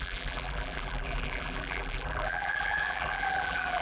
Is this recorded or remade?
remade